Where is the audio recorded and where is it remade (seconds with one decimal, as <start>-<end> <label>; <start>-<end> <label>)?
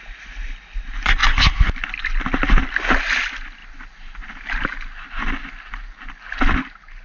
0.0-7.0 recorded